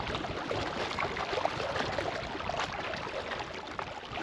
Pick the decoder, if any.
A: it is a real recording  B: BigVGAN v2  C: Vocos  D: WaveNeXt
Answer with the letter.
A